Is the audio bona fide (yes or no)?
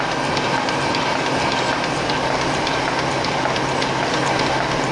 yes